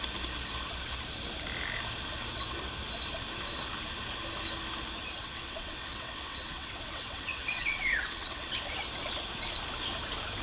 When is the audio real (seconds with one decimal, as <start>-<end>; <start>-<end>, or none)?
0.0-5.0; 8.7-10.4